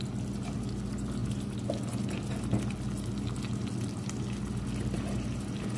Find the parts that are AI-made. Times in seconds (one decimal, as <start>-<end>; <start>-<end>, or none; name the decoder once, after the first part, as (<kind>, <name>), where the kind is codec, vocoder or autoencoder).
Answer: none